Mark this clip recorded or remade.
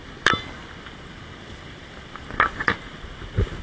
recorded